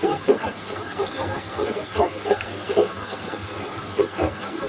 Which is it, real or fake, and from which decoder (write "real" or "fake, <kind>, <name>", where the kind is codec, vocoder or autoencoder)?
fake, codec, SNAC